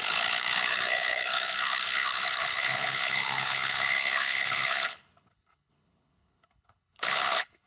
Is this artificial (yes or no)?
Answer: yes